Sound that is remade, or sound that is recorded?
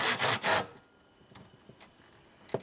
recorded